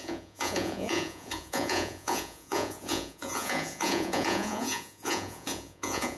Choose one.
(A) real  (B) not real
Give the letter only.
B